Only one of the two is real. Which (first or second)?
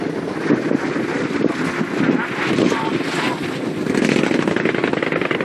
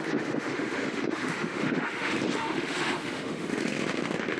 first